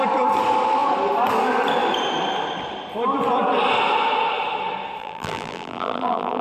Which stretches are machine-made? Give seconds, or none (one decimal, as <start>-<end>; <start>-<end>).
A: 5.0-6.4